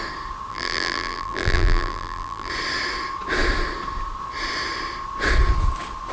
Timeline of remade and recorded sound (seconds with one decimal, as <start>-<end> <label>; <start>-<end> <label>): 0.0-0.5 recorded; 0.5-2.5 remade; 2.5-6.1 recorded